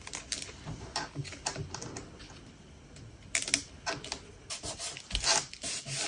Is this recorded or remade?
recorded